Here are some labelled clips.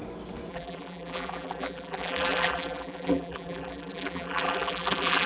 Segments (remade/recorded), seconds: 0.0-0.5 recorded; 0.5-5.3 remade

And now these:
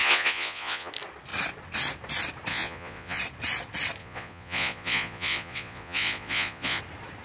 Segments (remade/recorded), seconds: 0.0-0.9 remade; 0.9-2.5 recorded; 2.5-3.2 remade; 3.2-4.0 recorded; 4.0-6.8 remade; 6.8-7.2 recorded